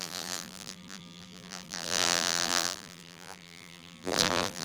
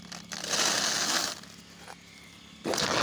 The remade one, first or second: first